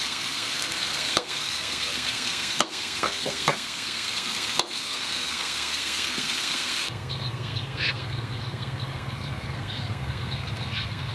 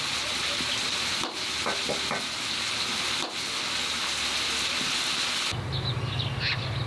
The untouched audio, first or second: second